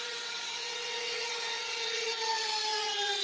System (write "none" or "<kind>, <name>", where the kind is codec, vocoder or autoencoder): vocoder, WaveNeXt